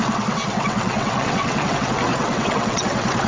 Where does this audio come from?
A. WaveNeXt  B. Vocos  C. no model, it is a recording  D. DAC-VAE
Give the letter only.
A